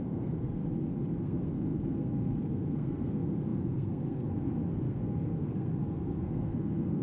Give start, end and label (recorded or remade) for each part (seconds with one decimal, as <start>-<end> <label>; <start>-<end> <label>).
0.0-0.6 remade; 0.6-1.2 recorded; 1.2-7.0 remade